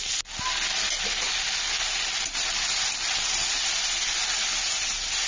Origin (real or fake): real